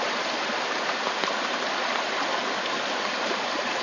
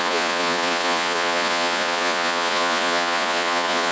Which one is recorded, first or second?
first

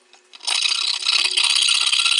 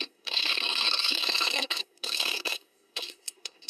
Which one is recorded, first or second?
first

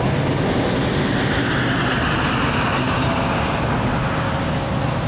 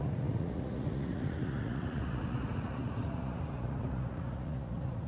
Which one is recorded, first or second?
first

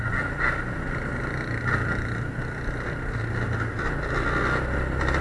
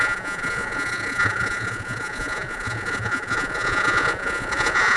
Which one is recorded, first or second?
first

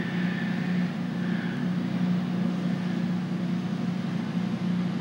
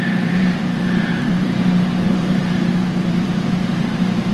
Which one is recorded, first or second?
first